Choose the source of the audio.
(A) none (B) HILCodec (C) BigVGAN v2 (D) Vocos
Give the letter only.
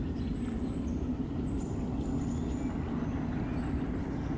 A